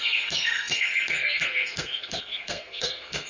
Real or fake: fake